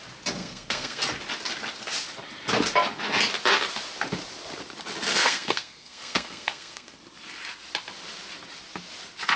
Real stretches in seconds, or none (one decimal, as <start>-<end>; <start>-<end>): 0.0-0.4; 1.0-5.1; 7.0-9.4